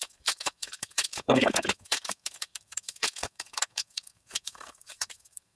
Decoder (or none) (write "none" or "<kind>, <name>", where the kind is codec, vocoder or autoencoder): codec, SNAC